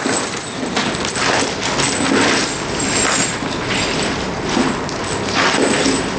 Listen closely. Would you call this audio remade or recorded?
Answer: recorded